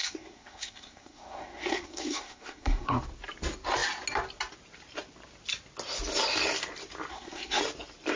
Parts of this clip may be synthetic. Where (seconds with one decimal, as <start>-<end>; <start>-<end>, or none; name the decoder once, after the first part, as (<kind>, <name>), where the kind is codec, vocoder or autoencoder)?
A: 0.0-3.0 (codec, SNAC); 7.1-7.6